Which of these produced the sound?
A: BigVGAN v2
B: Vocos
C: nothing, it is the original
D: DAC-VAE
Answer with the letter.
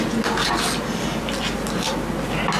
C